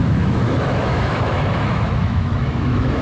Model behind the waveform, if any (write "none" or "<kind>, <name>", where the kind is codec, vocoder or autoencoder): autoencoder, DAC-VAE